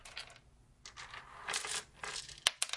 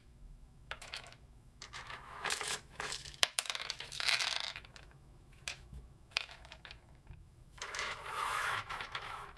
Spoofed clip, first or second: second